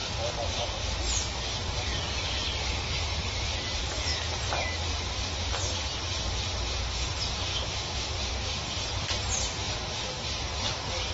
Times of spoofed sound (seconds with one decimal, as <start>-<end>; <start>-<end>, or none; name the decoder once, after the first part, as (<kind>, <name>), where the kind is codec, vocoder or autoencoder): 7.5-8.1 (autoencoder, DAC-VAE)